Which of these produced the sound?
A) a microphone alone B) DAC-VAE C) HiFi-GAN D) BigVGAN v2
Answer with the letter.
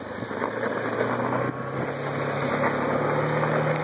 A